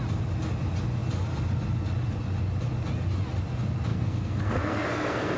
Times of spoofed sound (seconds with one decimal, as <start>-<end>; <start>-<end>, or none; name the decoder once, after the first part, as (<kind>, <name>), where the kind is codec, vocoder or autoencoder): 3.9-5.4 (codec, SNAC)